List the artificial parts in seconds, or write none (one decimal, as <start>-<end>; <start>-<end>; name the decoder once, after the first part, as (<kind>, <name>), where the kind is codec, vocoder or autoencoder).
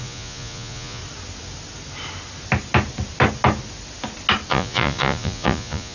0.0-1.0 (vocoder, Vocos); 4.5-5.9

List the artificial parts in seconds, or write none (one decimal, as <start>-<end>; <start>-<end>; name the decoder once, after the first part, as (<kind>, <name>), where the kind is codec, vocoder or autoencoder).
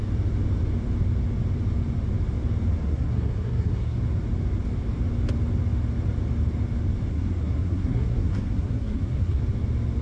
2.8-4.0 (codec, SNAC); 7.1-9.4